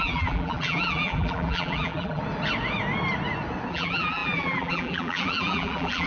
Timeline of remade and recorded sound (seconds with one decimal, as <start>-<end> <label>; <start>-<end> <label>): 0.0-2.2 remade; 2.2-3.7 recorded; 3.7-6.1 remade